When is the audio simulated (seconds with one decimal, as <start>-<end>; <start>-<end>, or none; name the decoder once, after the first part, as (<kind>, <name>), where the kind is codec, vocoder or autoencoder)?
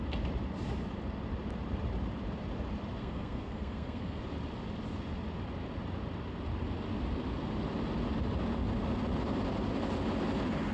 3.0-4.2 (codec, SNAC)